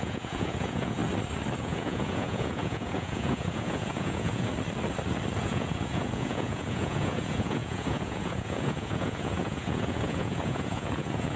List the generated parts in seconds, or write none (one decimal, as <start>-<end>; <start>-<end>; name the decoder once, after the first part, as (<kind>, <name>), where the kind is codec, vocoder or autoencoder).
0.0-1.0 (vocoder, Vocos); 1.6-4.5; 5.4-11.4